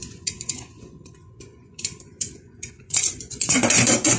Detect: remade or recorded remade